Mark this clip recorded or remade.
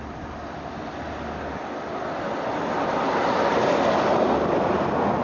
recorded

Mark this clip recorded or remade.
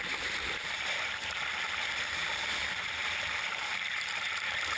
remade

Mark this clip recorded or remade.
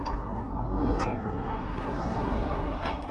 remade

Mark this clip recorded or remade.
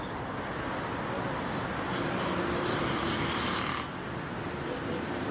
recorded